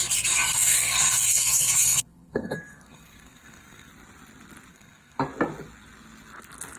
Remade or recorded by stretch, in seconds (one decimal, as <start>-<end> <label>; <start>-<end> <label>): 0.0-0.5 recorded; 0.5-3.9 remade; 3.9-4.7 recorded; 4.7-5.2 remade; 5.2-6.8 recorded